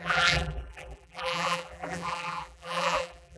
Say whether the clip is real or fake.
fake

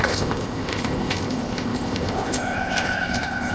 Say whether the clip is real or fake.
fake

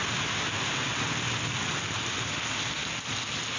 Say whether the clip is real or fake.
real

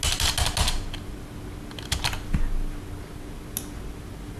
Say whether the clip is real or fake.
real